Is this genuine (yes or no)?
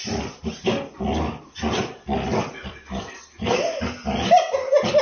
yes